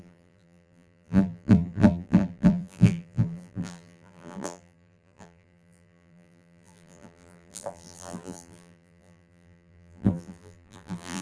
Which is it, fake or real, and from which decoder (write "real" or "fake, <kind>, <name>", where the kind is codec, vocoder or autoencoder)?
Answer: fake, vocoder, BigVGAN v2